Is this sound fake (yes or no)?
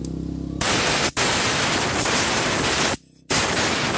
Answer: no